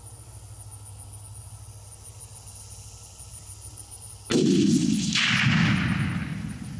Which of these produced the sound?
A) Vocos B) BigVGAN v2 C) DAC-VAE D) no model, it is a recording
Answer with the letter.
D